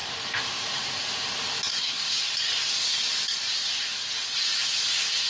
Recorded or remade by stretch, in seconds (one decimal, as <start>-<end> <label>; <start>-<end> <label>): 0.0-1.7 recorded; 1.7-2.3 remade; 2.3-5.3 recorded